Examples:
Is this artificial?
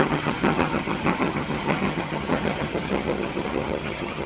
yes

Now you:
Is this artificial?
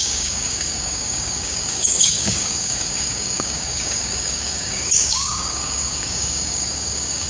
yes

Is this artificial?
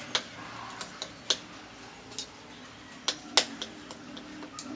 no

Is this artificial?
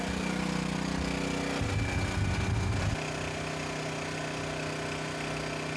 no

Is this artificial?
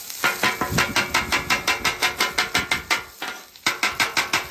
no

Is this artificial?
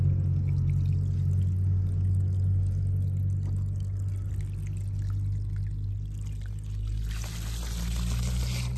no